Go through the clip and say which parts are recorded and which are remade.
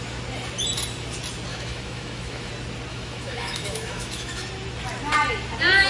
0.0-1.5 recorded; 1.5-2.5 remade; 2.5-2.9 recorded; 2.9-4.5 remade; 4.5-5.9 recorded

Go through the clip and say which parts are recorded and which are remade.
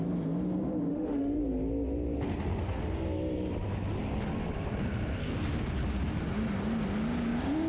0.0-0.9 recorded; 0.9-1.4 remade; 1.4-7.7 recorded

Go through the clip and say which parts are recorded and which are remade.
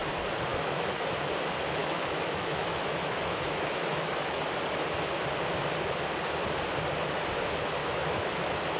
0.0-0.5 recorded; 0.5-1.0 remade; 1.0-1.8 recorded; 1.8-4.4 remade; 4.4-7.8 recorded; 7.8-8.8 remade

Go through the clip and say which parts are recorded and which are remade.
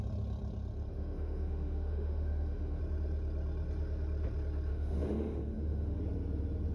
0.0-0.9 recorded; 0.9-2.8 remade; 2.8-4.7 recorded; 4.7-6.0 remade; 6.0-6.7 recorded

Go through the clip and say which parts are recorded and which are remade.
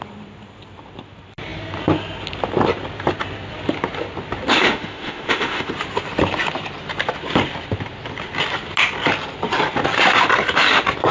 0.0-4.5 recorded; 4.5-5.7 remade; 5.7-11.1 recorded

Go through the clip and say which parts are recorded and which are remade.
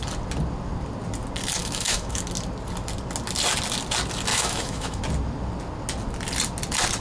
0.0-1.6 recorded; 1.6-2.2 remade; 2.2-4.3 recorded; 4.3-5.0 remade; 5.0-7.0 recorded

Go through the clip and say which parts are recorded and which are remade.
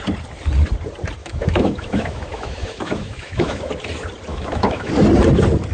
0.0-1.2 recorded; 1.2-3.7 remade; 3.7-4.3 recorded; 4.3-4.9 remade; 4.9-5.7 recorded